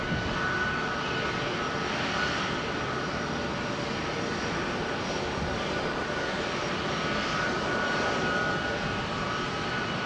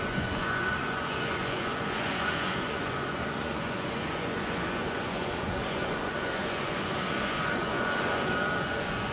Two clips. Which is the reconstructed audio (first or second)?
second